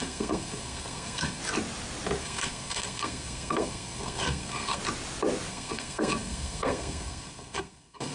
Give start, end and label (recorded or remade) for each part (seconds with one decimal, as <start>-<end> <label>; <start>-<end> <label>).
0.0-1.4 remade; 1.4-2.2 recorded; 2.2-4.8 remade; 4.8-5.5 recorded; 5.5-8.1 remade